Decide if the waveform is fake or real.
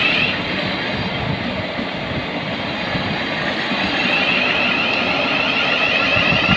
real